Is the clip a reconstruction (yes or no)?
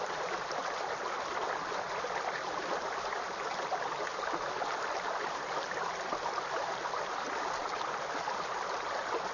no